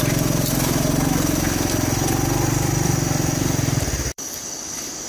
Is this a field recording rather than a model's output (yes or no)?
no